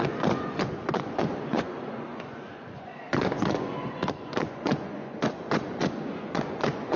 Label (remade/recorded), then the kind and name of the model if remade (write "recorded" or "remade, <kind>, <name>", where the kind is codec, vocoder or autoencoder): remade, vocoder, Vocos